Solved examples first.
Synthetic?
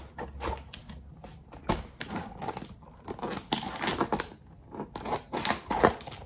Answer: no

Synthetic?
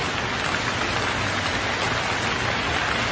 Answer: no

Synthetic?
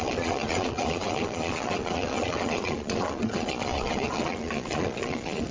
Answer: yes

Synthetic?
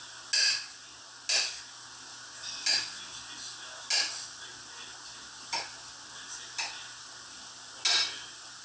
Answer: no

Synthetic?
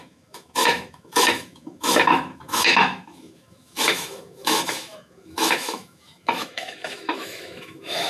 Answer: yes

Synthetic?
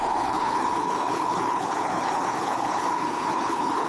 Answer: yes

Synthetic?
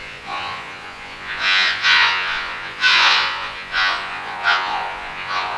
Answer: yes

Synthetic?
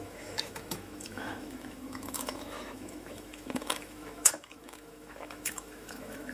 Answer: yes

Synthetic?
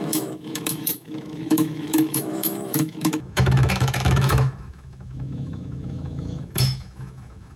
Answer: yes